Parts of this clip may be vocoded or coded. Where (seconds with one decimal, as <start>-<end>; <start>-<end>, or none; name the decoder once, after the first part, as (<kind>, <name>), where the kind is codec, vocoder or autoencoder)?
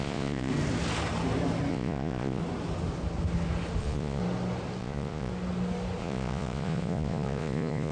0.0-0.5 (vocoder, Vocos); 1.7-2.4; 3.8-4.2; 4.8-5.3; 6.0-7.9